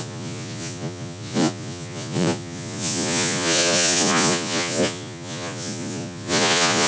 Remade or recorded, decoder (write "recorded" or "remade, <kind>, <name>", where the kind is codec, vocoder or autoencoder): remade, vocoder, Vocos